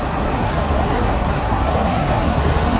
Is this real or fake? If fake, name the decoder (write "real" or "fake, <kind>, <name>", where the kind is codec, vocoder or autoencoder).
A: fake, codec, SNAC